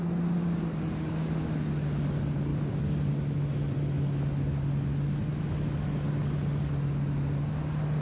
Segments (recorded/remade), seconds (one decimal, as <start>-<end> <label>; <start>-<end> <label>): 0.0-2.5 recorded; 2.5-3.1 remade; 3.1-8.0 recorded